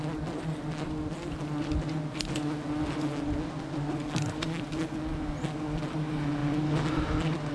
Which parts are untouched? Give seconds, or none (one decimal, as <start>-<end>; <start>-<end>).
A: 0.0-7.5